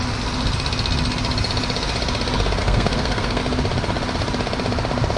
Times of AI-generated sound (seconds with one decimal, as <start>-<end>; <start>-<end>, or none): 2.6-3.4